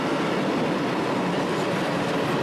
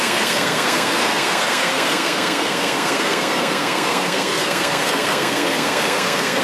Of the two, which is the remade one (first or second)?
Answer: second